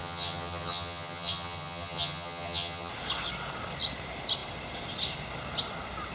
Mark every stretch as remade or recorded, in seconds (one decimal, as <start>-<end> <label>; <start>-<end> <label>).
0.0-2.9 remade; 2.9-6.1 recorded